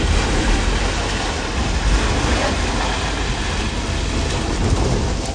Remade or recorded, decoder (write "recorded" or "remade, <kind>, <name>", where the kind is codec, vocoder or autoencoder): recorded